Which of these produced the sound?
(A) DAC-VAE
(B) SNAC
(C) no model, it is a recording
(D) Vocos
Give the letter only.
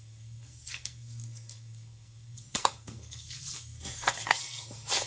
B